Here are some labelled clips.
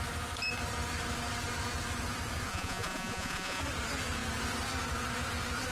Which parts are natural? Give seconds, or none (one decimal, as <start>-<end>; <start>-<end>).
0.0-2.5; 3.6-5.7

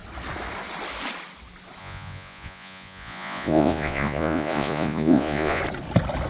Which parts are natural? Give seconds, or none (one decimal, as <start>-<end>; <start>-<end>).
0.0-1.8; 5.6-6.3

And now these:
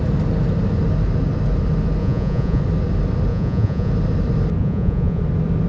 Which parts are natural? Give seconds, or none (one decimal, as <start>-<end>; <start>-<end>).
0.0-2.0; 2.6-3.3; 3.9-4.6; 5.2-5.7

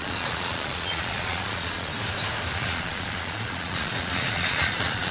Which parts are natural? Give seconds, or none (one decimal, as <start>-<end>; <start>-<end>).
1.9-2.5

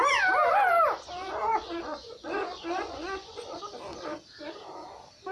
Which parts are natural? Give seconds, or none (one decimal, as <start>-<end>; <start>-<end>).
0.0-1.5; 3.6-5.3

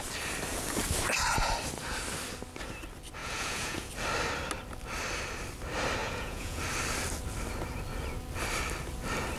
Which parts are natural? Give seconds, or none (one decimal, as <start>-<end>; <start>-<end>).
0.0-3.2; 3.9-6.0; 6.6-9.4

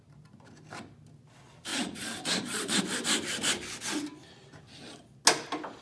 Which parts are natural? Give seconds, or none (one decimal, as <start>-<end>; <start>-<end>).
0.0-1.7; 2.8-5.8